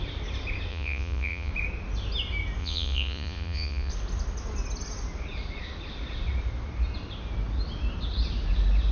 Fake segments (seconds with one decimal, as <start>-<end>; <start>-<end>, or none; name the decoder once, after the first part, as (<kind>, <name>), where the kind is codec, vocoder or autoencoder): 0.7-1.5 (vocoder, Vocos); 2.6-3.9